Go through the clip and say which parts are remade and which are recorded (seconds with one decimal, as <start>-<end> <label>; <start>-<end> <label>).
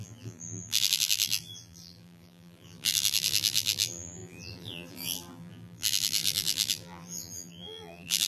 0.0-8.3 remade